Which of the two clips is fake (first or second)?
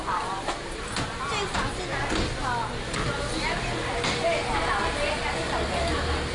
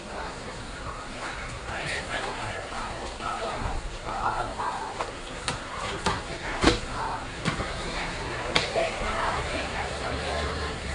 second